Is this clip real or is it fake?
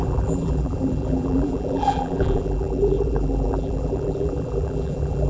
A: fake